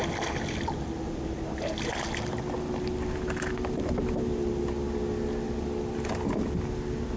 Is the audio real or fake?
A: real